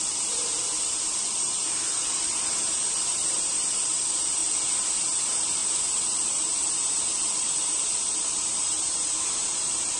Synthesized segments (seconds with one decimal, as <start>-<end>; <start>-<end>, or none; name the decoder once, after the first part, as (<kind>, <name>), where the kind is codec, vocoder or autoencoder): 0.0-4.4 (vocoder, BigVGAN v2); 5.0-10.0